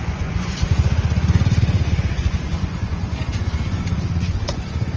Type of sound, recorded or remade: remade